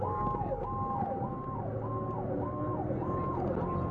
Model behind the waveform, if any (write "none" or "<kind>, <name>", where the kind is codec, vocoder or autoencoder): none